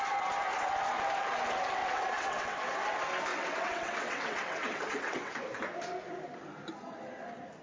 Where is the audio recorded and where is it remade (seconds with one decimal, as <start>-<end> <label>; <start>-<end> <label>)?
0.0-1.8 recorded; 1.8-2.6 remade; 2.6-3.3 recorded; 3.3-5.4 remade; 5.4-7.6 recorded